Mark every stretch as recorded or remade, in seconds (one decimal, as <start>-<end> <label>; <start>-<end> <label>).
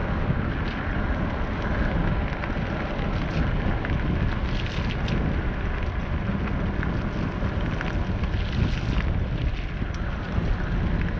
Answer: 0.0-11.2 recorded